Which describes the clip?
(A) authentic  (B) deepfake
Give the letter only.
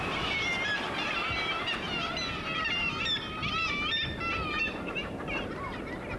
B